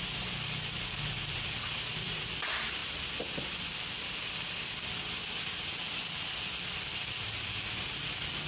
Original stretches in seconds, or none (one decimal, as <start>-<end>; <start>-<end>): 0.0-8.5